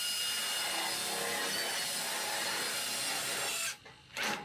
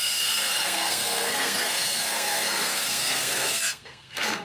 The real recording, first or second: first